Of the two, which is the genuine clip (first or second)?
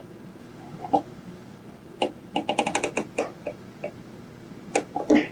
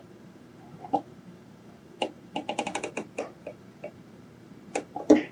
first